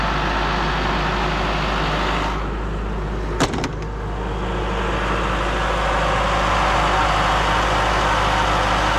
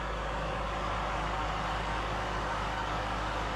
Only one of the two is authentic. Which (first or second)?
first